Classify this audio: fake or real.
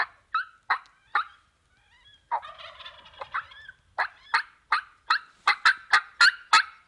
real